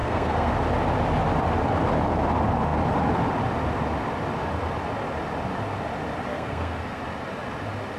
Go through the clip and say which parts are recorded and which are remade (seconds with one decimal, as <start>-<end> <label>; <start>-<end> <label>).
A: 0.0-0.5 remade; 0.5-6.3 recorded; 6.3-7.0 remade; 7.0-8.0 recorded